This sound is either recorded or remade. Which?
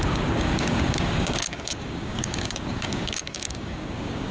remade